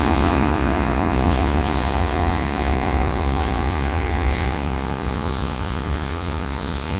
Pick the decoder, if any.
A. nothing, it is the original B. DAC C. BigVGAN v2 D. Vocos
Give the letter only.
D